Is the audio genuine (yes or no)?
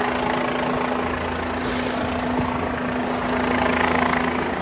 yes